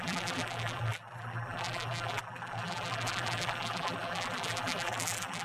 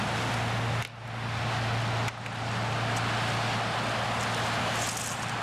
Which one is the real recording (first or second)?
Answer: second